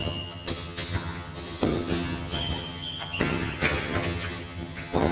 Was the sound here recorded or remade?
remade